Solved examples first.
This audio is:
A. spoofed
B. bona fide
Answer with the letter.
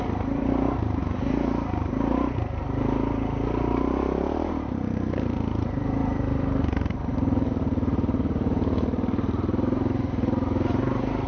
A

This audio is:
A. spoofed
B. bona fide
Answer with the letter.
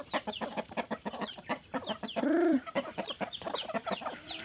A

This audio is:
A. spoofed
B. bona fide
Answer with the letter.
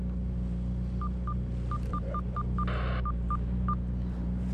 B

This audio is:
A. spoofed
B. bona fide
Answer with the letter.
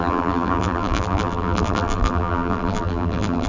A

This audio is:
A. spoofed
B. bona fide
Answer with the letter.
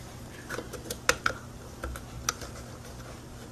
B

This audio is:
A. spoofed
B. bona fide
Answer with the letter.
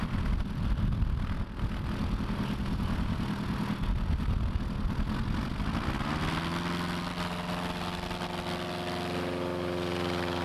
B